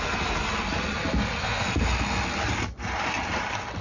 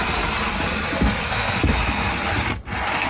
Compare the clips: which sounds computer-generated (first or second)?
second